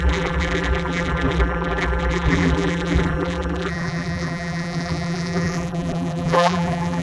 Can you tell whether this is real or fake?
fake